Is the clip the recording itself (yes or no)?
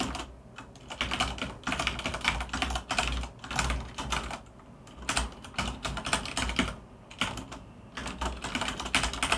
yes